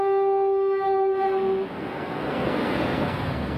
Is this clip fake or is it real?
fake